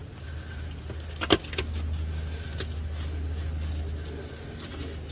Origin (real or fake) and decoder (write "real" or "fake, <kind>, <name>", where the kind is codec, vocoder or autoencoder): real